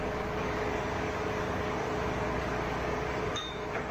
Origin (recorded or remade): remade